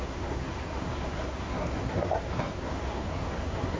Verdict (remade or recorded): remade